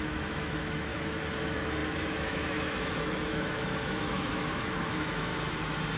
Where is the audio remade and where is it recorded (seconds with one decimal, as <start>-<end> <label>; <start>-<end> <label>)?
0.0-0.9 remade; 0.9-1.4 recorded; 1.4-5.3 remade; 5.3-6.0 recorded